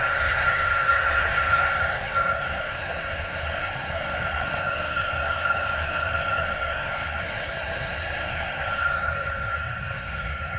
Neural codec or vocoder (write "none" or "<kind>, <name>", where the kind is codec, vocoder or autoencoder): codec, SNAC